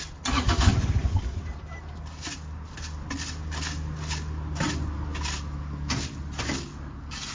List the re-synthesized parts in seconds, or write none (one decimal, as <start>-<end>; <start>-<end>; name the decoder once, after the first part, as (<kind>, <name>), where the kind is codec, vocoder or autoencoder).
none